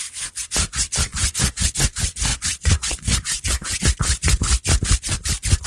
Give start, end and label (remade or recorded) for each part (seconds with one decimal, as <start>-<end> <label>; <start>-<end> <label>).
0.0-1.1 recorded; 1.1-1.8 remade; 1.8-2.3 recorded; 2.3-3.8 remade; 3.8-5.7 recorded